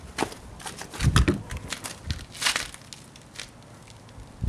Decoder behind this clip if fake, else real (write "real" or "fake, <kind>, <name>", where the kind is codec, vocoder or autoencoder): real